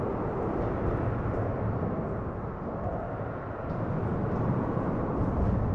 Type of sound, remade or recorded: recorded